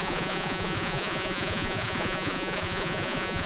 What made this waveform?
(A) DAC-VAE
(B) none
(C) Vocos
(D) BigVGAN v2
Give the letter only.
C